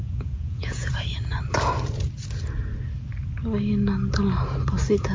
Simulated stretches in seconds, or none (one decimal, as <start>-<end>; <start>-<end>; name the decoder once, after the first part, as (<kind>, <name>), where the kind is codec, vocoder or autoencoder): 0.0-0.9 (vocoder, Vocos)